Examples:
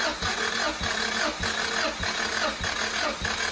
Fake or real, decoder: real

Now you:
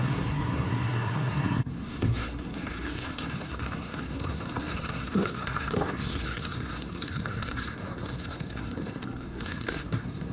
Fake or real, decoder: fake, codec, SNAC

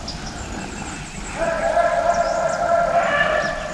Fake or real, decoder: real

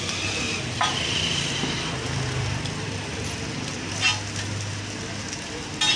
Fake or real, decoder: real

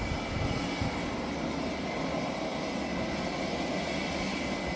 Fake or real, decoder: real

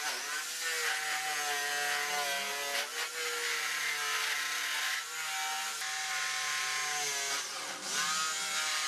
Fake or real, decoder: real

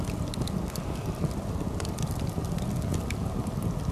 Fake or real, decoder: real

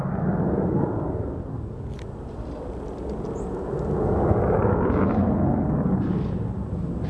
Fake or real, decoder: real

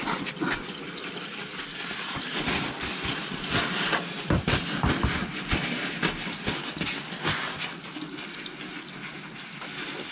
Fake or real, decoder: real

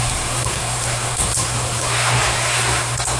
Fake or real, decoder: fake, codec, SNAC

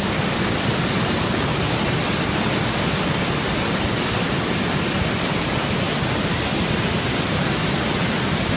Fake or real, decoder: real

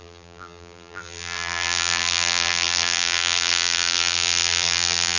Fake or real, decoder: fake, vocoder, BigVGAN v2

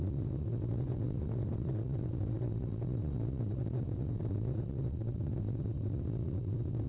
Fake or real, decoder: fake, vocoder, WaveNeXt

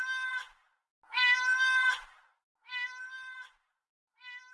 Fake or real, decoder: real